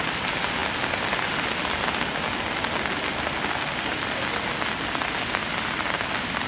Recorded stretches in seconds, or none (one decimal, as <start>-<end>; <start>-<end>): 0.0-6.5